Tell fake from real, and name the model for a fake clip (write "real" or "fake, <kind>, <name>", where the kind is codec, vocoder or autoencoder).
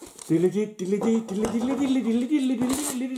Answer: real